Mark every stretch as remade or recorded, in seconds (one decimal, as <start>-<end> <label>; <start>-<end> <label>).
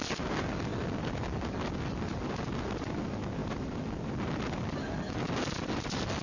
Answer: 0.0-6.2 recorded